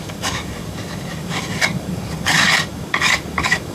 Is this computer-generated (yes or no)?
yes